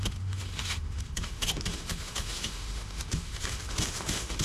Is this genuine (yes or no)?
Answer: no